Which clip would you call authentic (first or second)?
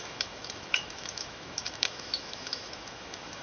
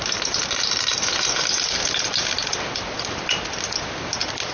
second